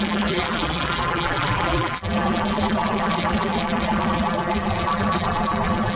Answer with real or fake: fake